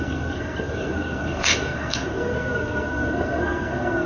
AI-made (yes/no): yes